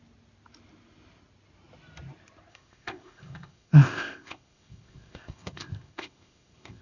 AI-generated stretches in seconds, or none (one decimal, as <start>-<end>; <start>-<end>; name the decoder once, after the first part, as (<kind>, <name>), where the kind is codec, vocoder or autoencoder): 2.5-6.8 (codec, ZipCodec)